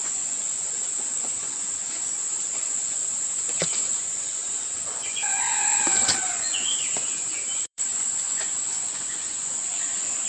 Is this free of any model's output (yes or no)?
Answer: no